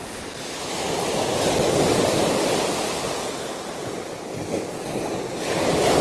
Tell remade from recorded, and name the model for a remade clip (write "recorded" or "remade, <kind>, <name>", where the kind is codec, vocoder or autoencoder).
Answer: recorded